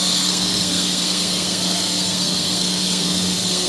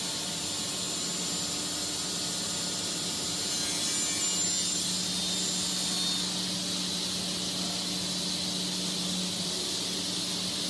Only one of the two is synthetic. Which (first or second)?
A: first